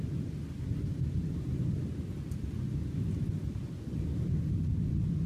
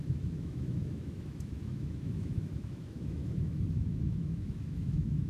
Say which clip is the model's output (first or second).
second